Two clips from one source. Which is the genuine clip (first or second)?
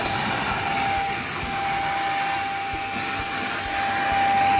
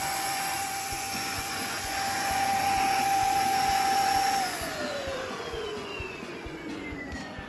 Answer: first